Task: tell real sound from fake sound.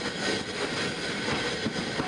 real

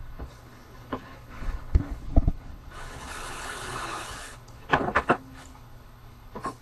fake